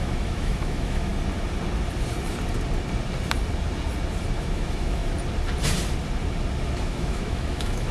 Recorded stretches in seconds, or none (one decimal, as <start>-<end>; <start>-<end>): 1.1-4.4; 5.0-6.8